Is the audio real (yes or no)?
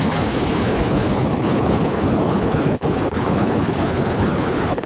no